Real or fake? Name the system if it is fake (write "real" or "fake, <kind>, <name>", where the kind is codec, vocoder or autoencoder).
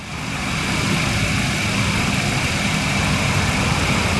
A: real